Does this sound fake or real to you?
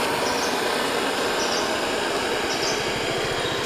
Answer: real